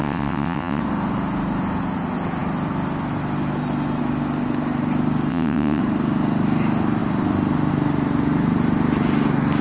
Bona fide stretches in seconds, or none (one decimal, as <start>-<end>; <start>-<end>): 0.8-5.3; 5.8-9.6